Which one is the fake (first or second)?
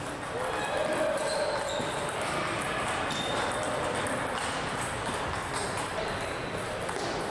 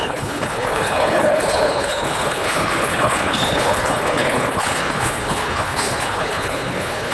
second